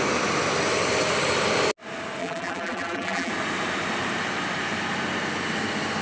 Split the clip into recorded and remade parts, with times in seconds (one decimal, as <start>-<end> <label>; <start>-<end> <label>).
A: 0.0-2.2 recorded; 2.2-3.3 remade; 3.3-6.0 recorded